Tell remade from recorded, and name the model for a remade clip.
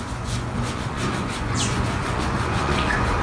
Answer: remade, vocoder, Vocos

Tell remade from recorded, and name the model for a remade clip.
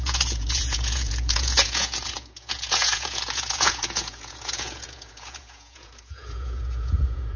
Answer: remade, vocoder, Vocos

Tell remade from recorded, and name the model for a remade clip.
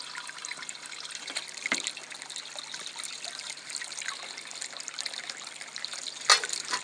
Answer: recorded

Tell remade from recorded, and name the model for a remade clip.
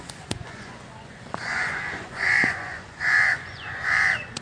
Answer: remade, vocoder, Vocos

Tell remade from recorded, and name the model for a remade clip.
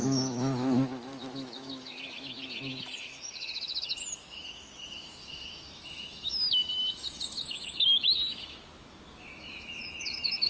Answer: remade, autoencoder, DAC-VAE